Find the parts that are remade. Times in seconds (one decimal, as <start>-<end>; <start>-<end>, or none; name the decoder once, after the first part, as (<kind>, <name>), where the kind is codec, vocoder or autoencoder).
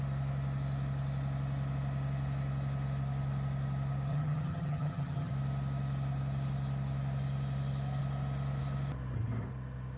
4.1-5.3 (vocoder, HiFi-GAN)